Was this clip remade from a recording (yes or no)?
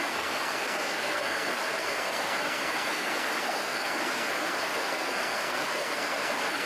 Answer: yes